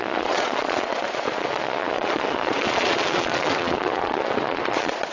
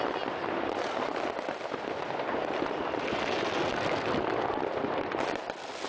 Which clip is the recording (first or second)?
second